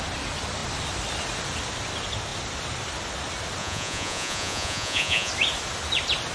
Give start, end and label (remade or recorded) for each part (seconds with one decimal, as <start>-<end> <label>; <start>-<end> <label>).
0.0-3.6 recorded; 3.6-5.3 remade; 5.3-6.3 recorded